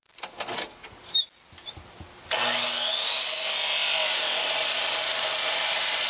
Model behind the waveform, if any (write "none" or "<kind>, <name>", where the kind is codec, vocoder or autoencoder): none